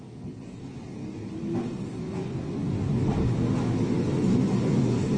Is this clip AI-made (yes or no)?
no